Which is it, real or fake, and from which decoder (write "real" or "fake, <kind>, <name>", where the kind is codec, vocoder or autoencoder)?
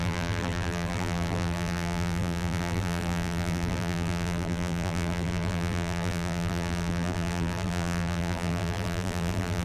fake, vocoder, BigVGAN v2